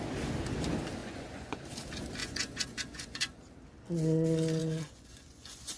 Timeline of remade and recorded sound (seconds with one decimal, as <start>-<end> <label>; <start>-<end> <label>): 0.0-1.0 recorded; 1.0-1.6 remade; 1.6-2.2 recorded; 2.2-3.4 remade; 3.4-4.6 recorded; 4.6-5.8 remade